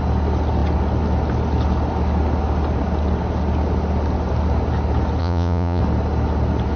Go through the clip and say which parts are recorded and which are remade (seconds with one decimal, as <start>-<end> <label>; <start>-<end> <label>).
0.0-5.2 recorded; 5.2-5.8 remade; 5.8-6.8 recorded